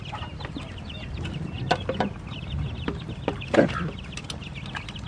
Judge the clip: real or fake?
real